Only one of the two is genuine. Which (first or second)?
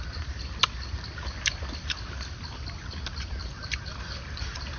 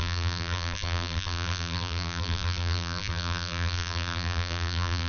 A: first